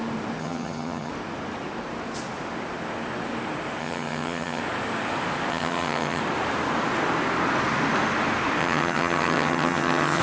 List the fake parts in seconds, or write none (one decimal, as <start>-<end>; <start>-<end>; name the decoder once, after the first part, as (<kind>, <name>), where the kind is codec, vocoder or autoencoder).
0.4-1.1 (vocoder, HiFi-GAN); 3.8-4.6; 5.5-6.2; 8.6-10.2